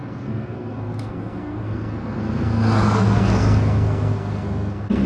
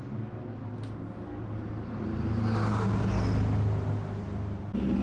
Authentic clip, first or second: second